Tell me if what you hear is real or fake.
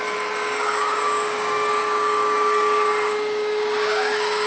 fake